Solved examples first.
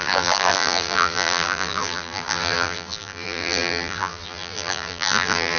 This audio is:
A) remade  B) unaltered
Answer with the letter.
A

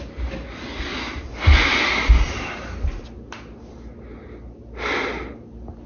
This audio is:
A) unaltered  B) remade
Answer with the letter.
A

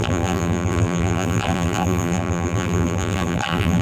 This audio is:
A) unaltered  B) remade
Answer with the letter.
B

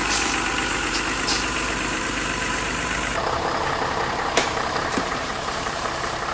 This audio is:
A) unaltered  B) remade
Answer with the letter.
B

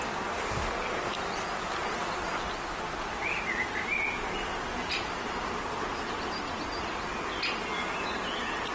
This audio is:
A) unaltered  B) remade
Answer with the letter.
A